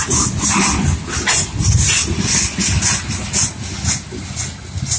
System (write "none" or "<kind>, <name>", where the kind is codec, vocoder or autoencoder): none